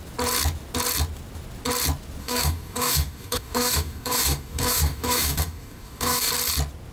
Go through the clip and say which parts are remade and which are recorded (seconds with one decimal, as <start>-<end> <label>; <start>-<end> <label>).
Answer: 0.0-2.2 recorded; 2.2-6.3 remade; 6.3-6.9 recorded